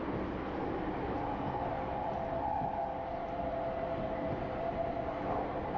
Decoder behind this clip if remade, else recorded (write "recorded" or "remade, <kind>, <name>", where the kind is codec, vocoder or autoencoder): recorded